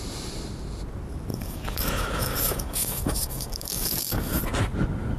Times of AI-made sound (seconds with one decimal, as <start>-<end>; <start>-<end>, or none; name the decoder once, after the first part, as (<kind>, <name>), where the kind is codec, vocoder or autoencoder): 1.3-4.4 (codec, DAC)